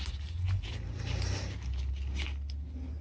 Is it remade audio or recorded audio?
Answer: recorded